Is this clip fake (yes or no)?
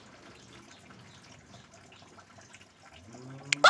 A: no